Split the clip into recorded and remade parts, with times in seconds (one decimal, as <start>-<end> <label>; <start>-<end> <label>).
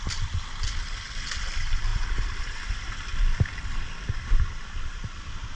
0.0-3.1 remade; 3.1-5.6 recorded